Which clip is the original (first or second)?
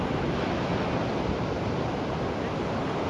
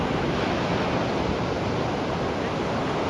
second